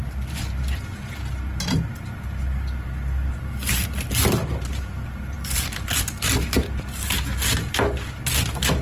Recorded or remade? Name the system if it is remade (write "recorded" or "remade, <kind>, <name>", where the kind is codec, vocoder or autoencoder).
recorded